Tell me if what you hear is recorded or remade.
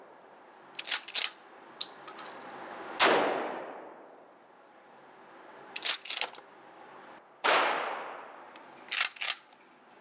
recorded